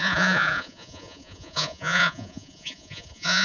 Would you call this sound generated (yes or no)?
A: yes